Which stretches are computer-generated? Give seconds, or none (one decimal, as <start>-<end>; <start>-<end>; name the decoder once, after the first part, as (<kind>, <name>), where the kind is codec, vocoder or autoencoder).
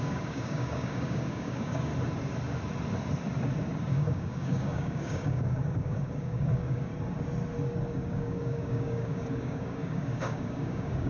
0.0-1.9 (codec, DAC); 3.8-6.9; 7.9-11.1